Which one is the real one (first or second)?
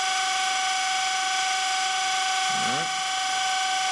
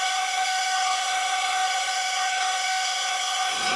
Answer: first